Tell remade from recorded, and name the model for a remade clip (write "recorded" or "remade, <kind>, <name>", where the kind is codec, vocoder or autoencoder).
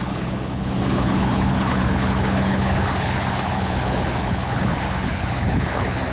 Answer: remade, codec, HILCodec